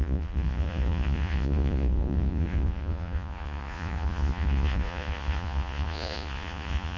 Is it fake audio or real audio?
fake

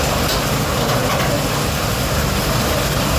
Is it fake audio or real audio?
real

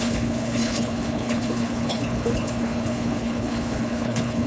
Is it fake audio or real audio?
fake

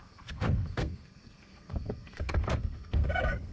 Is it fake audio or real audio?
fake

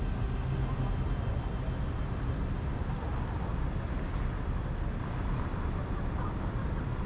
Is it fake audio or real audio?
real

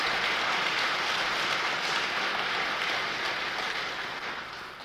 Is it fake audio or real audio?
real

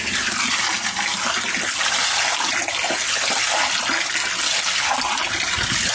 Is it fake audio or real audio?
real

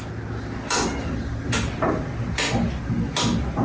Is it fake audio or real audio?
real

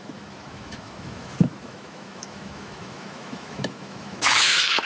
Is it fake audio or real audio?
fake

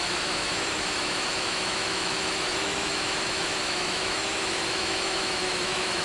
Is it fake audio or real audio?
fake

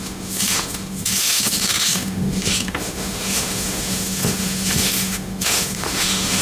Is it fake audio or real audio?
fake